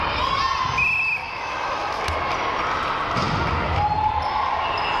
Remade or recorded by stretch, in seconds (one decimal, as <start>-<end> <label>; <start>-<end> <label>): 0.0-1.2 recorded; 1.2-2.0 remade; 2.0-5.0 recorded